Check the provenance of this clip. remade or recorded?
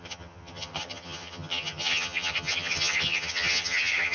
remade